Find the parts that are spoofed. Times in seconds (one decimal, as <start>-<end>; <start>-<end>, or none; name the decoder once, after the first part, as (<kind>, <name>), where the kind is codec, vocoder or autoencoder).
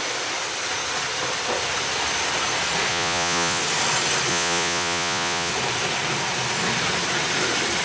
2.9-3.6 (vocoder, Vocos); 4.3-5.5